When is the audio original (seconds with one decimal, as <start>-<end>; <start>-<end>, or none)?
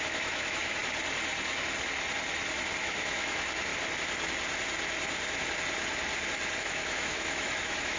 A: 0.8-2.8; 3.7-6.6